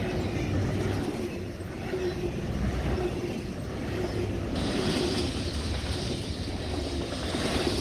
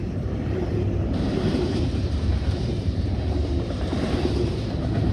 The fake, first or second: second